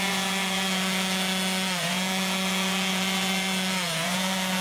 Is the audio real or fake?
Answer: fake